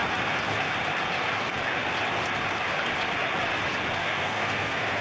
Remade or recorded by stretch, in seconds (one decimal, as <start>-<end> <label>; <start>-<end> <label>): 0.0-4.0 recorded; 4.0-5.0 remade

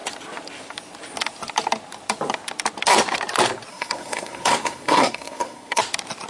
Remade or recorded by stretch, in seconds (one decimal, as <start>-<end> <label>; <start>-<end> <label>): 0.0-3.7 recorded; 3.7-5.8 remade; 5.8-6.3 recorded

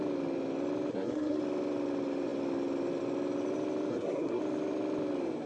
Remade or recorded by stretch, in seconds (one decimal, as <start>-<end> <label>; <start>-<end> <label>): 0.0-0.9 recorded; 0.9-1.4 remade; 1.4-3.9 recorded; 3.9-4.4 remade; 4.4-5.5 recorded